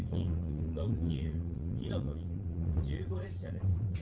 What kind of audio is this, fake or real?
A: fake